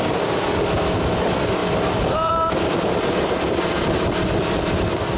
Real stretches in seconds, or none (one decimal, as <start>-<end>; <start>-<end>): none